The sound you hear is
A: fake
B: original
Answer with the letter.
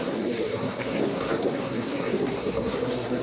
A